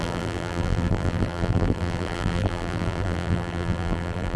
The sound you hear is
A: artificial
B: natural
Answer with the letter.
A